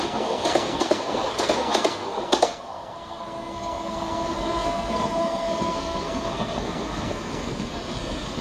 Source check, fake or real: fake